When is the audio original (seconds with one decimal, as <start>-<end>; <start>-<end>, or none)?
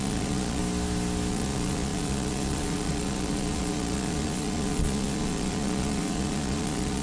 0.6-1.3